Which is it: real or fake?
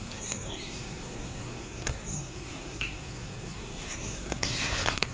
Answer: fake